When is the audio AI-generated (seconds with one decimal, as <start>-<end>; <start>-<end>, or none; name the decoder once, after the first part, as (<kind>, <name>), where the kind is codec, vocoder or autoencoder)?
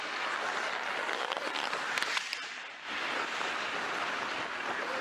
none